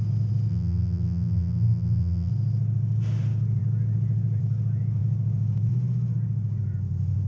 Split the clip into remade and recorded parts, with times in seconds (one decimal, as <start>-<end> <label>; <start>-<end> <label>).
0.0-0.5 recorded; 0.5-2.3 remade; 2.3-7.3 recorded